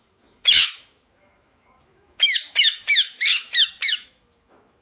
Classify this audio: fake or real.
fake